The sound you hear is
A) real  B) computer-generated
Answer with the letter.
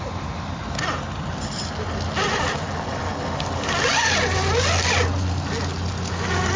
A